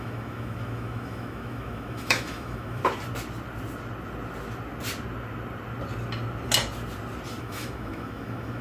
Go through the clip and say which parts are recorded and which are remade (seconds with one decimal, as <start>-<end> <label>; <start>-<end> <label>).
0.0-2.8 remade; 2.8-7.4 recorded; 7.4-8.6 remade

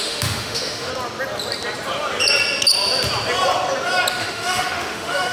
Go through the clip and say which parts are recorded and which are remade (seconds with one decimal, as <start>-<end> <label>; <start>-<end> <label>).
0.0-0.9 remade; 0.9-4.1 recorded; 4.1-5.3 remade

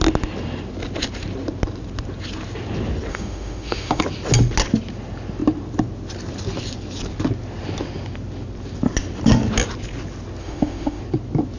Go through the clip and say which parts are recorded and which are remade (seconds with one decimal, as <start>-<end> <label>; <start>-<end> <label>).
0.0-3.1 recorded; 3.1-4.0 remade; 4.0-10.4 recorded; 10.4-11.0 remade; 11.0-11.6 recorded